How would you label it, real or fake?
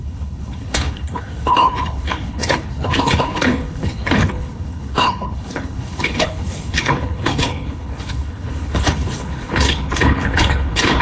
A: fake